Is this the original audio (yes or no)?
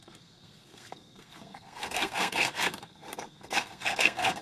no